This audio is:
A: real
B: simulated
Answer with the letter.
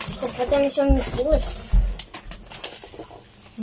A